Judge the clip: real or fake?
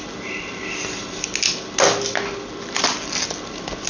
real